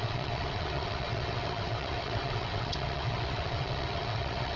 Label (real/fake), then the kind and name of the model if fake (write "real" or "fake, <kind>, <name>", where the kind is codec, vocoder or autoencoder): fake, vocoder, WaveNeXt